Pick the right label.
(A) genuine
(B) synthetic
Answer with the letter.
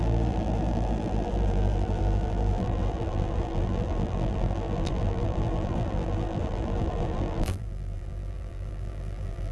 B